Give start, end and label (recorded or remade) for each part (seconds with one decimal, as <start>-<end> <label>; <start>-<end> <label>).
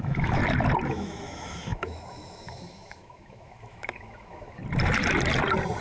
0.0-0.4 remade; 0.4-0.9 recorded; 0.9-4.6 remade; 4.6-5.8 recorded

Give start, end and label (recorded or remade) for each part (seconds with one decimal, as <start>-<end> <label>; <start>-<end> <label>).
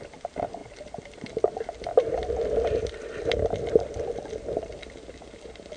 0.0-0.6 recorded; 0.6-4.1 remade; 4.1-5.8 recorded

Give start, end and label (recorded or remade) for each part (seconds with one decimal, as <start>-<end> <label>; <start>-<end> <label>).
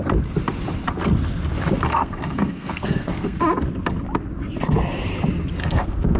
0.0-1.9 recorded; 1.9-3.4 remade; 3.4-5.6 recorded; 5.6-6.2 remade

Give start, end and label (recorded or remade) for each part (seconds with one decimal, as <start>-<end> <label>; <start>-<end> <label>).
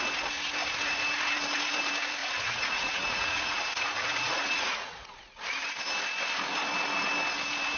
0.0-2.2 recorded; 2.2-5.2 remade; 5.2-7.8 recorded